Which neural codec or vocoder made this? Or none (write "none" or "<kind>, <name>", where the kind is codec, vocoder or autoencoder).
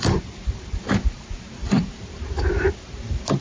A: vocoder, BigVGAN v2